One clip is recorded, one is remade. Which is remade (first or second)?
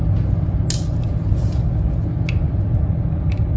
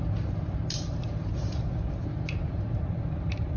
second